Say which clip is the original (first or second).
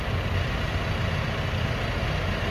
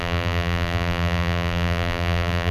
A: first